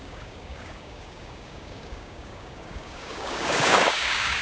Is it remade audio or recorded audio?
remade